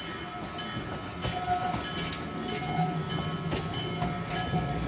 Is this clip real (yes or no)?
yes